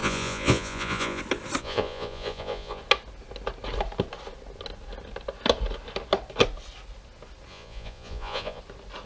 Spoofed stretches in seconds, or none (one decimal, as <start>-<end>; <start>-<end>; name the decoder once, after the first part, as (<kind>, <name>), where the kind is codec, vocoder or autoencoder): 0.0-1.2 (vocoder, Vocos); 1.6-2.8; 7.5-8.6